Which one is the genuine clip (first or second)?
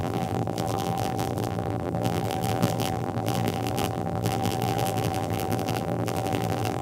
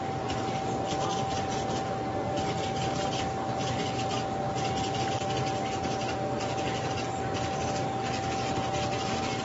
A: second